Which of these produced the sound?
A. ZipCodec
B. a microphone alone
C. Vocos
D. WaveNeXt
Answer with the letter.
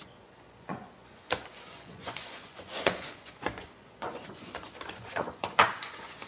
C